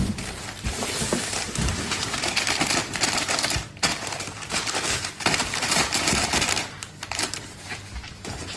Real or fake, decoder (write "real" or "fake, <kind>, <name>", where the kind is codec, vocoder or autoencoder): fake, vocoder, BigVGAN v2